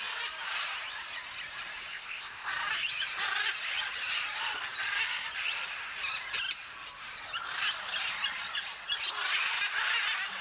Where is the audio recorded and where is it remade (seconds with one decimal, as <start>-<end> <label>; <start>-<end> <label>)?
0.0-1.9 recorded; 1.9-2.5 remade; 2.5-10.4 recorded

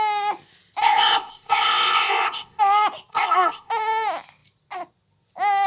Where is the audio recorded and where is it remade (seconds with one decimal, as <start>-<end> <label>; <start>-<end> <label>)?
0.0-0.8 recorded; 0.8-2.6 remade; 2.6-3.1 recorded; 3.1-3.7 remade; 3.7-5.7 recorded

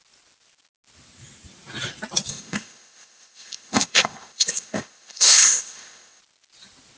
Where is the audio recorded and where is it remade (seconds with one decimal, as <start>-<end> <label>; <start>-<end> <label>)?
0.0-2.3 recorded; 2.3-6.2 remade; 6.2-7.0 recorded

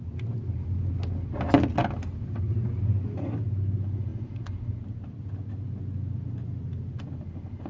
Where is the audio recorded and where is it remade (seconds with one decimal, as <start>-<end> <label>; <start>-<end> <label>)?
0.0-7.7 recorded

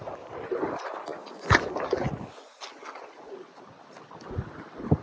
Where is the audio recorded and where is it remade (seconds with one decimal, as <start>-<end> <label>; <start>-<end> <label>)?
0.0-5.0 recorded

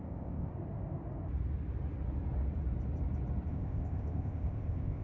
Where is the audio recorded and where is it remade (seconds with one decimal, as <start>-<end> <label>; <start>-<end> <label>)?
0.0-0.5 remade; 0.5-3.5 recorded; 3.5-5.0 remade

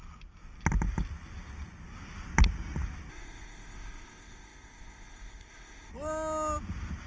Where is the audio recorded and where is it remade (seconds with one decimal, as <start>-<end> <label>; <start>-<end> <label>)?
0.0-3.1 recorded; 3.1-5.9 remade; 5.9-7.1 recorded